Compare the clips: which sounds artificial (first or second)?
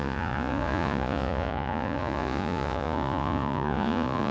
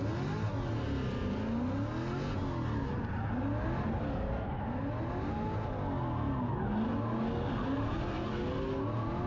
first